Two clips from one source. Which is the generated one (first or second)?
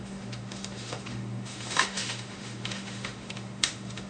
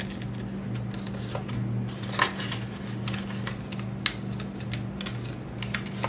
first